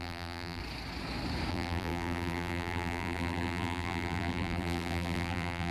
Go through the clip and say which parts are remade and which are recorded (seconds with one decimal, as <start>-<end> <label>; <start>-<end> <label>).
0.0-0.6 remade; 0.6-1.5 recorded; 1.5-5.7 remade